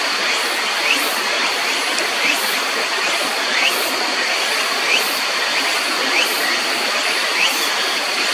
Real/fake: real